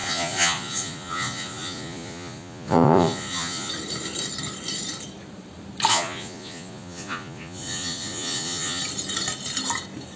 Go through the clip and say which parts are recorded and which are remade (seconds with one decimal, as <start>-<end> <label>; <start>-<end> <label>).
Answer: 0.0-3.7 remade; 3.7-5.9 recorded; 5.9-8.8 remade; 8.8-10.2 recorded